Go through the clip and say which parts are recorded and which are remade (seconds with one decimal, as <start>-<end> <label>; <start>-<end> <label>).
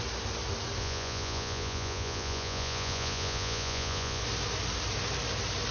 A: 0.0-0.8 recorded; 0.8-4.2 remade; 4.2-5.7 recorded